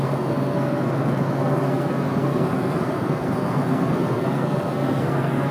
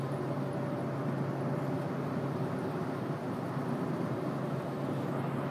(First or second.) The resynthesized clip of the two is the first